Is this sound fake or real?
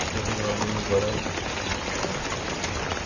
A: real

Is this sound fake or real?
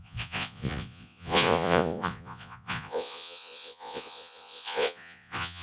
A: fake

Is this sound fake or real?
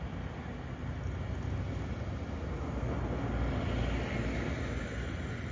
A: real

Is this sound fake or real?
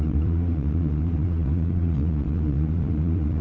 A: fake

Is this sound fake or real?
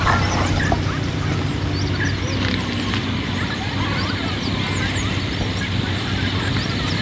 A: real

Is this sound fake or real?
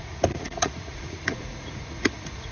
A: fake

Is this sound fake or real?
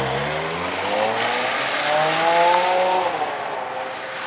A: real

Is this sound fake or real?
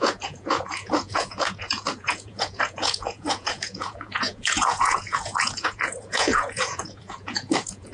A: fake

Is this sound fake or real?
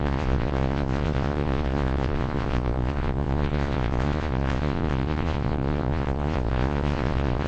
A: fake